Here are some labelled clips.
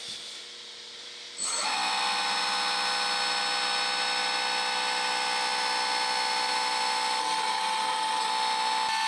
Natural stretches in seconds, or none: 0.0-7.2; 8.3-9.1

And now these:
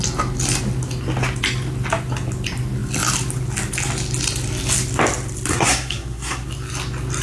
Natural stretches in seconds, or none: 0.0-5.5; 6.5-7.2